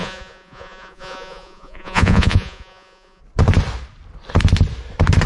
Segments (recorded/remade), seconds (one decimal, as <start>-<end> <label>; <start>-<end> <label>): 0.0-3.2 remade; 3.2-5.3 recorded